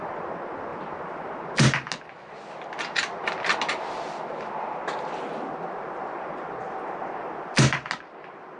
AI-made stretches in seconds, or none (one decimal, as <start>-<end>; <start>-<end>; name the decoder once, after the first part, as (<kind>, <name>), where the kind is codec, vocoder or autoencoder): none